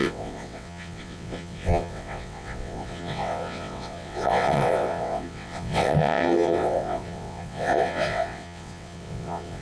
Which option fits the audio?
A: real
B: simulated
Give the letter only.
B